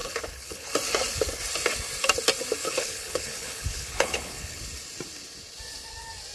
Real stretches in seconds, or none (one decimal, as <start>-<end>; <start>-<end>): 0.7-2.6; 4.6-6.3